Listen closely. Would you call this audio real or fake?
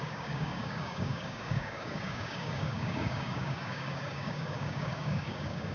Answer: fake